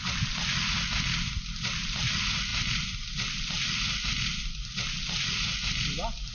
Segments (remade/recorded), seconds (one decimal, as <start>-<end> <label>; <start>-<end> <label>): 0.0-6.3 recorded